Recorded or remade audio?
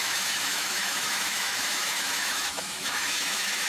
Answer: remade